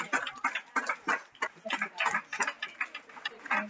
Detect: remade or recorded recorded